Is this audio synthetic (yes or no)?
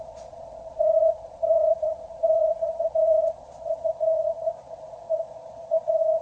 yes